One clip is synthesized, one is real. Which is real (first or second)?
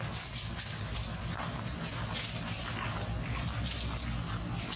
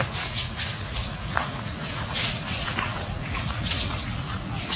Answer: first